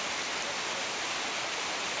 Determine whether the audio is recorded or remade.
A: recorded